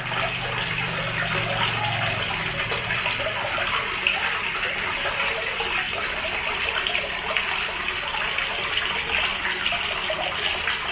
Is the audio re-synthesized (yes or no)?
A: no